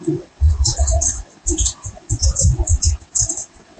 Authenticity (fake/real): fake